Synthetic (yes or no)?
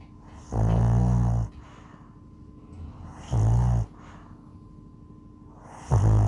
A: no